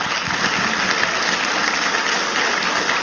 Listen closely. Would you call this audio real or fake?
real